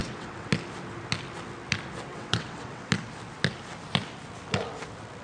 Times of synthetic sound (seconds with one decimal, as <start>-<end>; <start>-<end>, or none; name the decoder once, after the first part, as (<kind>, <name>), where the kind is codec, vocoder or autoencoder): 0.0-0.5 (vocoder, WaveNeXt); 2.1-2.9